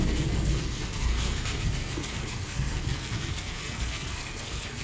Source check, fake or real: fake